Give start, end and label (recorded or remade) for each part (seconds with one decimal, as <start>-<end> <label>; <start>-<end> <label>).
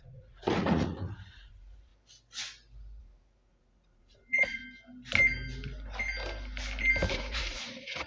0.0-1.9 remade; 1.9-3.0 recorded; 3.0-4.6 remade; 4.6-7.1 recorded; 7.1-8.1 remade